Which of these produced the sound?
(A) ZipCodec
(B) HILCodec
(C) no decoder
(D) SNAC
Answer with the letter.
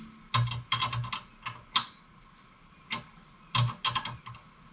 C